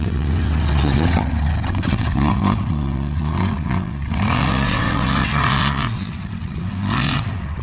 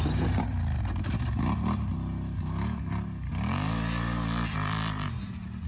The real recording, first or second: second